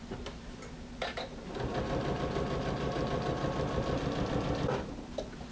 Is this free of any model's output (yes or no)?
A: yes